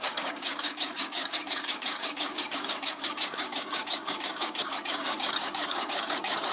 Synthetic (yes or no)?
yes